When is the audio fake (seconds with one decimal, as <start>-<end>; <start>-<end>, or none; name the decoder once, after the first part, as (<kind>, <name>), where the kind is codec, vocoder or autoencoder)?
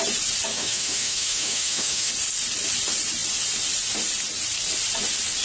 0.5-2.1 (autoencoder, DAC-VAE)